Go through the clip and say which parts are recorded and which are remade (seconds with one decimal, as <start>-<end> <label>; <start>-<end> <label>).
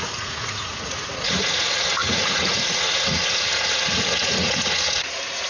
0.0-5.5 remade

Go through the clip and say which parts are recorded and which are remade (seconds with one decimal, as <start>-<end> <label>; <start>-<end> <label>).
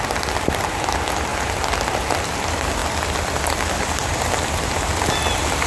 0.0-5.7 recorded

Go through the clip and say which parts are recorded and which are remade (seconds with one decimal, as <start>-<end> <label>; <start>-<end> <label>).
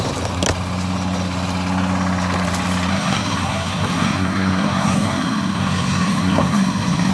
0.0-2.9 recorded; 2.9-7.1 remade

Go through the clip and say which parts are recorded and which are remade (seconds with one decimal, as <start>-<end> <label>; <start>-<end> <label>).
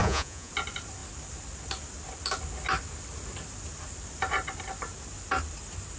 0.0-0.5 remade; 0.5-6.0 recorded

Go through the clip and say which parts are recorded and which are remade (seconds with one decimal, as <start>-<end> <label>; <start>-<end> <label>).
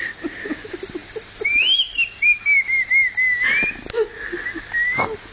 0.0-5.3 recorded